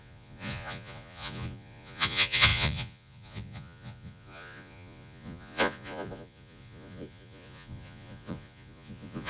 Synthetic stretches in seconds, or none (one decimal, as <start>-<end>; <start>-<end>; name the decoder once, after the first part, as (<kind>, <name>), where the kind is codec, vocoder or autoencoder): 0.0-9.3 (vocoder, Vocos)